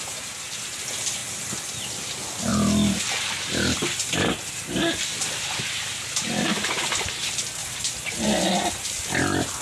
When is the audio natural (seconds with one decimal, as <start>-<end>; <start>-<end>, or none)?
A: 0.0-9.6